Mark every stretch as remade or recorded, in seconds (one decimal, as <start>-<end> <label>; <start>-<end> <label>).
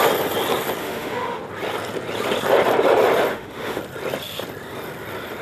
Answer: 0.0-0.8 recorded; 0.8-1.4 remade; 1.4-3.3 recorded; 3.3-3.8 remade; 3.8-5.4 recorded